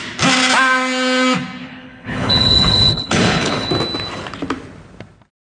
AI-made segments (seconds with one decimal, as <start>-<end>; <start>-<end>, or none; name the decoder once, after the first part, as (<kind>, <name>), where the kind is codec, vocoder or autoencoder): 1.6-3.7 (codec, HILCodec)